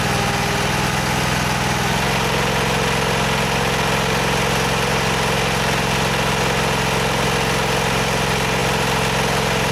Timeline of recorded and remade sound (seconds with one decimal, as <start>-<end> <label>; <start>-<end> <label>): 0.0-9.7 recorded